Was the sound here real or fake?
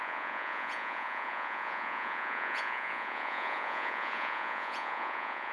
fake